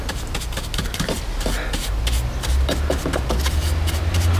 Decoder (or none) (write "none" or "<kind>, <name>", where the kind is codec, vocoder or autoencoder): none